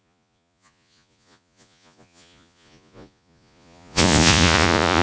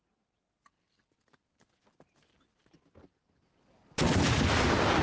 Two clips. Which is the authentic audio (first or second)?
second